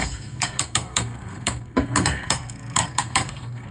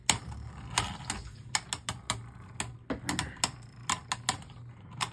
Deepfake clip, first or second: first